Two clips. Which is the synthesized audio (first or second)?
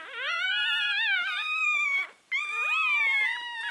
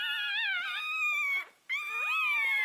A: first